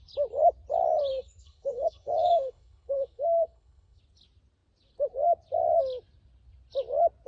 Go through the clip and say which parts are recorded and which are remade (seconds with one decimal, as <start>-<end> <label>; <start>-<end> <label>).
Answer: 0.0-1.1 recorded; 1.1-4.0 remade; 4.0-7.3 recorded